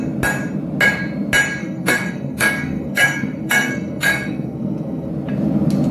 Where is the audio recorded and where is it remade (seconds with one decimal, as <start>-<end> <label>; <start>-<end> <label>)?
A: 0.0-1.6 recorded; 1.6-5.1 remade; 5.1-5.9 recorded